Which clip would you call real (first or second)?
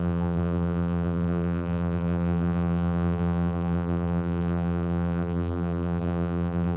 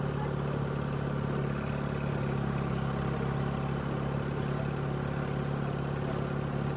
second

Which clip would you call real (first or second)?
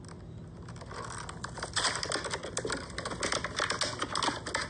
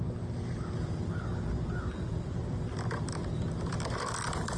first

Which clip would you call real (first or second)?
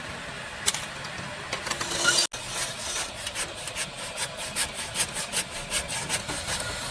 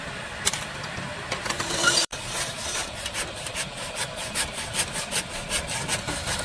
first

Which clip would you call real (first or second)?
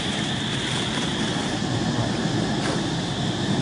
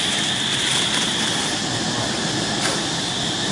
second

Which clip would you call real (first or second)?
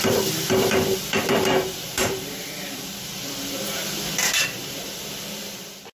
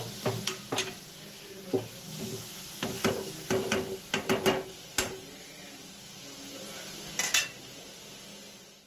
second